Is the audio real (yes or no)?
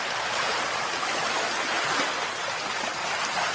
yes